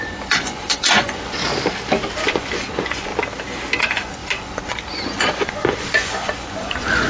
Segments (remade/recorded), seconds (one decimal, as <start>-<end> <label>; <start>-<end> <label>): 0.0-1.4 remade; 1.4-2.3 recorded; 2.3-3.1 remade; 3.1-3.8 recorded; 3.8-7.1 remade